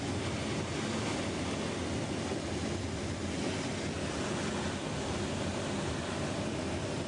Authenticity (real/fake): real